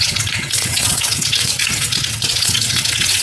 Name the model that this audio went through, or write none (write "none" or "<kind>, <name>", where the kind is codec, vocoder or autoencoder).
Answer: vocoder, WaveNeXt